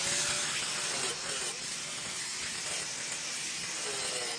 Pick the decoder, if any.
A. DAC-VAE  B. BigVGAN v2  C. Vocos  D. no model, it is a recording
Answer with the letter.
D